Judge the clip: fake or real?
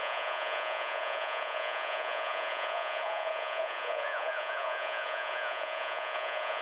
fake